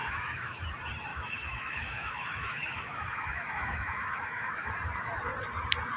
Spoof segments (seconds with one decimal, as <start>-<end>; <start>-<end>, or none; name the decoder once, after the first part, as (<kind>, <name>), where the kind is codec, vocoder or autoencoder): 0.0-0.6 (autoencoder, DAC-VAE); 1.1-4.7